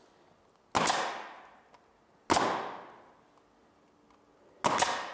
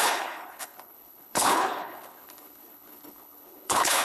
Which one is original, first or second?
first